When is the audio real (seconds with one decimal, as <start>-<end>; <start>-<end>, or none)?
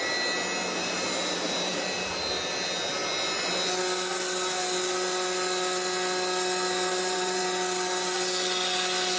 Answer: 0.0-0.8; 2.1-6.9; 7.4-9.2